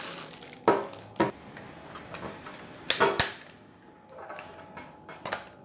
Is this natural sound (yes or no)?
yes